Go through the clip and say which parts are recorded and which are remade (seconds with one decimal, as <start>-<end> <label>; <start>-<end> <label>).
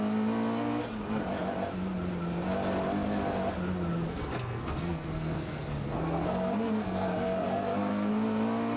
0.0-4.1 recorded; 4.1-8.1 remade; 8.1-8.8 recorded